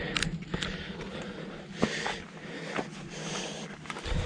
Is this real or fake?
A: real